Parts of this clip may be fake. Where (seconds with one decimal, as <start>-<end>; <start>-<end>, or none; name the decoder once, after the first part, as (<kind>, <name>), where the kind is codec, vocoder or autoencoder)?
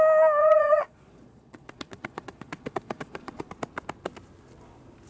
0.4-3.5 (vocoder, Vocos)